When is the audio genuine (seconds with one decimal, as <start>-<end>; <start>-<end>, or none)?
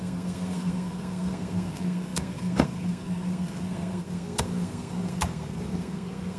none